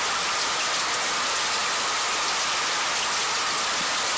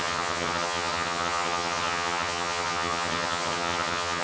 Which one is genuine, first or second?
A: first